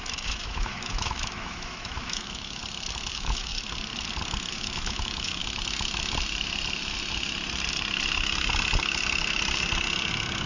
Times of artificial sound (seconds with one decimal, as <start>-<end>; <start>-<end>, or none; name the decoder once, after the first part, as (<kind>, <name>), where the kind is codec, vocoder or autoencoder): 0.0-2.6 (autoencoder, DAC-VAE); 3.1-3.5; 4.5-5.4